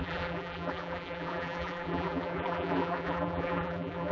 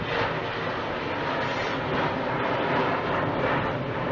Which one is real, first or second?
second